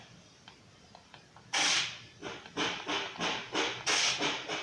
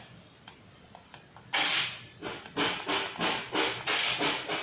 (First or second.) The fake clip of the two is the first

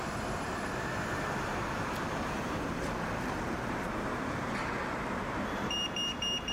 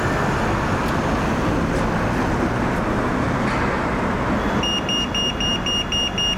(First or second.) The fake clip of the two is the first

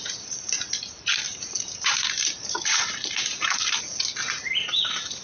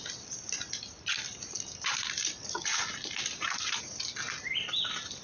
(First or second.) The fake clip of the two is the first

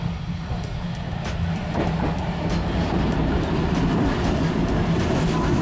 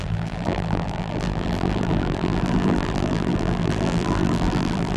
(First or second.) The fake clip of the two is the second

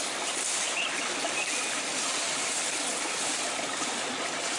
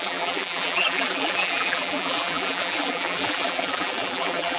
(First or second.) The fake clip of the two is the second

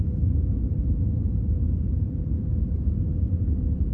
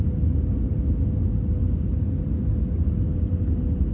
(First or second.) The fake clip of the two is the first